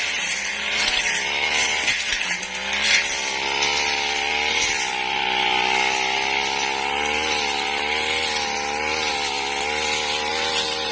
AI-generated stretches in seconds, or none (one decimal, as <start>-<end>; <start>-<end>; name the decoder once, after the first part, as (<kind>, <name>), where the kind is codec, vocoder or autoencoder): 0.5-1.9 (vocoder, BigVGAN v2)